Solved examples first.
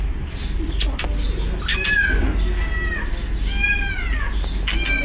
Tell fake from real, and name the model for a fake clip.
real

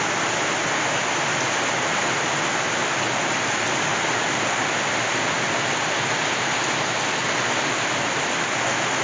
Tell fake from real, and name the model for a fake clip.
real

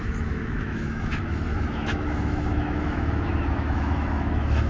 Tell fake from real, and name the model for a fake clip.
fake, autoencoder, DAC-VAE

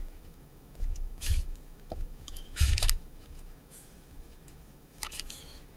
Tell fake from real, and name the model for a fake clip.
fake, autoencoder, DAC-VAE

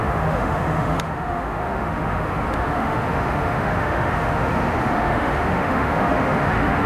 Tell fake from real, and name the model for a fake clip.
fake, autoencoder, DAC-VAE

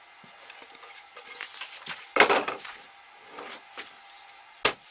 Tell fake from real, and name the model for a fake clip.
real